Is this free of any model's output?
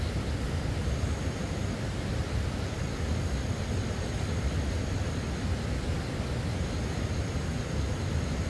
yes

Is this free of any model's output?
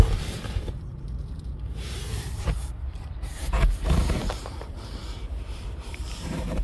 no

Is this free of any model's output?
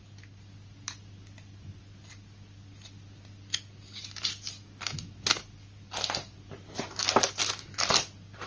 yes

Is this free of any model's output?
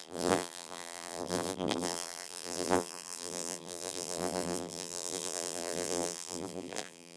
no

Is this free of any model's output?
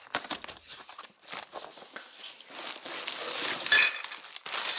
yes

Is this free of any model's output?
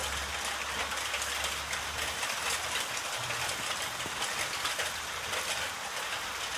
no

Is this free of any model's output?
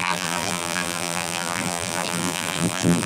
no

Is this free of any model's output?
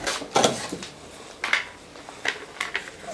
yes